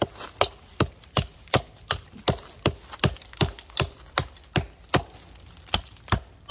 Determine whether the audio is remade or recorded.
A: recorded